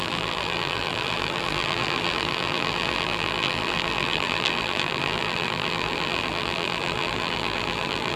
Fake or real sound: fake